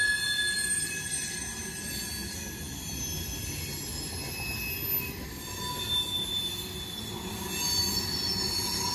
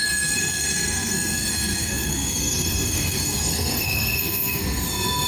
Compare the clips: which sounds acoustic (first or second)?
first